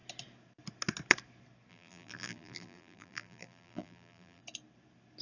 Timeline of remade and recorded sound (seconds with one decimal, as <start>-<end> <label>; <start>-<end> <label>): 0.0-1.7 recorded; 1.7-4.4 remade; 4.4-5.2 recorded